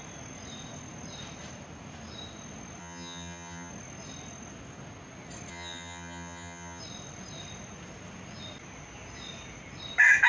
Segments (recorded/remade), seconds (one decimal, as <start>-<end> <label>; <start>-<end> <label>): 0.0-2.8 recorded; 2.8-3.7 remade; 3.7-5.5 recorded; 5.5-6.8 remade; 6.8-10.3 recorded